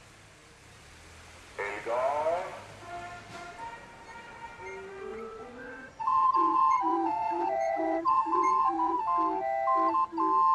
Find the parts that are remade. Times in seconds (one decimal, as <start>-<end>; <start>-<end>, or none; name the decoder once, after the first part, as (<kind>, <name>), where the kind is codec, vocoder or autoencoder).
5.1-9.0 (vocoder, Vocos)